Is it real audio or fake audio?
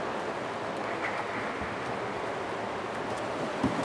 real